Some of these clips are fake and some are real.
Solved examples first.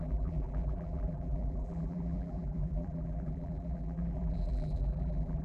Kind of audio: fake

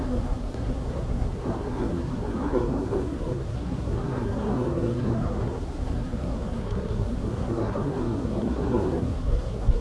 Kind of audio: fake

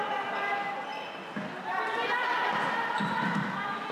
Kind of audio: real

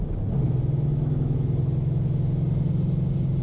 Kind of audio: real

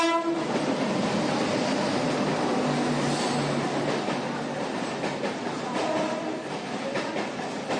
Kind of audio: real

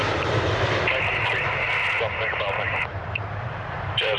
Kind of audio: fake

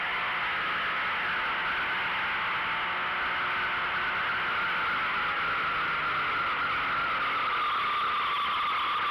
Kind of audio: real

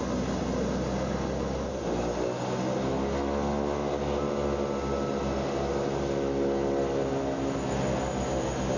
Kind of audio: real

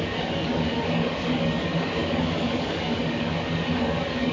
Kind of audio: fake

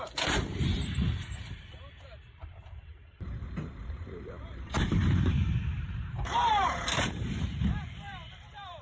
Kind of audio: fake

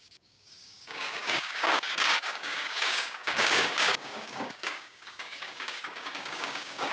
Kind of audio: fake